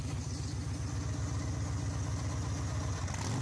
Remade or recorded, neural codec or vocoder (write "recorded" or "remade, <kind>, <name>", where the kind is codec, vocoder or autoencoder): recorded